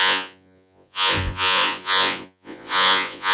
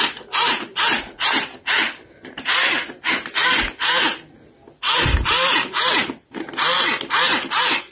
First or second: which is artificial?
first